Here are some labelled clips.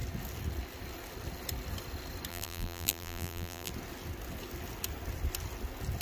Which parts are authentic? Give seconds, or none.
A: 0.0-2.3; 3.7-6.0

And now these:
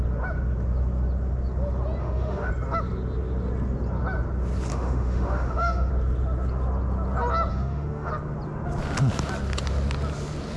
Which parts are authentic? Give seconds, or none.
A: 0.0-2.0; 2.5-4.7; 5.9-7.5; 8.1-10.6

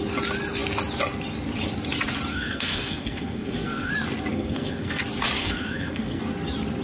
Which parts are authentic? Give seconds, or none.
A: 0.0-2.3; 3.9-4.3; 5.0-5.4; 6.2-6.8